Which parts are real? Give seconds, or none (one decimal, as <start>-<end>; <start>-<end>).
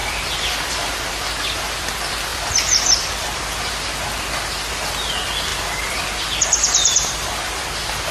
0.7-2.3; 3.7-5.5